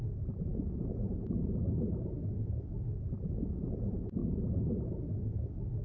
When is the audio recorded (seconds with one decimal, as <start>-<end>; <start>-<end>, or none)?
0.0-5.8